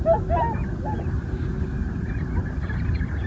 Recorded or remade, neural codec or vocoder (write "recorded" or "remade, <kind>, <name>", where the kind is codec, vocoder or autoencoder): recorded